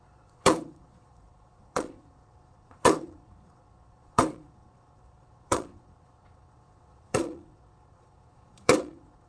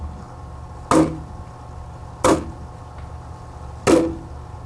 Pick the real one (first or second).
second